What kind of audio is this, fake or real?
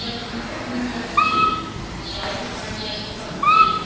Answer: real